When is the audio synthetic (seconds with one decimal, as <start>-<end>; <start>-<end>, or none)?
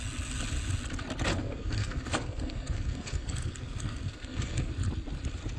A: 1.3-4.7